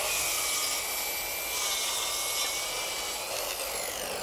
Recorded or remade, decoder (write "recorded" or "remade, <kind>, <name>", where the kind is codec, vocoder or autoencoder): recorded